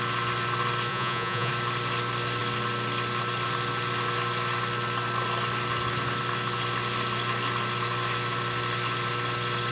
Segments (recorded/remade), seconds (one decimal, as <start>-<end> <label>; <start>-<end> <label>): 0.0-0.9 recorded; 0.9-1.5 remade; 1.5-9.7 recorded